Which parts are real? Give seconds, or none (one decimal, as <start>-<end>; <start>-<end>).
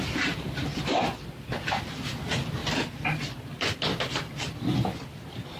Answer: 0.0-0.7; 1.5-2.6; 4.8-5.6